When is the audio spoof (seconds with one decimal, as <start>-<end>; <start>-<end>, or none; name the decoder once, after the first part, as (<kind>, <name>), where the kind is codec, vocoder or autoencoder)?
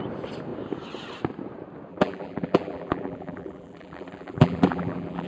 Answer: 1.9-5.3 (vocoder, BigVGAN v2)